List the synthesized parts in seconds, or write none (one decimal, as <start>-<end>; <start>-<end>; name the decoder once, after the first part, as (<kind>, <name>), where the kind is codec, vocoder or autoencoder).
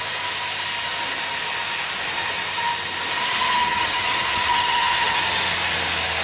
3.6-5.2 (vocoder, HiFi-GAN)